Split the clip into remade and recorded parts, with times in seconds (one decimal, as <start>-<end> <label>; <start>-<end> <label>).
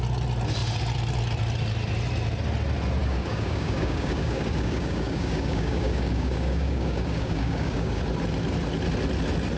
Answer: 0.0-3.0 recorded; 3.0-8.0 remade; 8.0-9.6 recorded